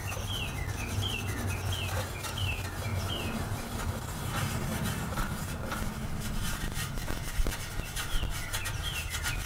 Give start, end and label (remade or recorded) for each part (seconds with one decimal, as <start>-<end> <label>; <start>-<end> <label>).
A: 0.0-2.9 recorded; 2.9-7.7 remade; 7.7-9.5 recorded